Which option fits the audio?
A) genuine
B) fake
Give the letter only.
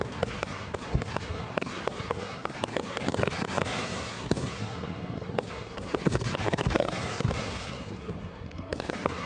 B